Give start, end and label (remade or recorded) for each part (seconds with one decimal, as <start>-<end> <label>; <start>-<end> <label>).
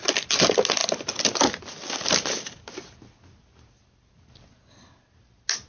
0.0-5.7 recorded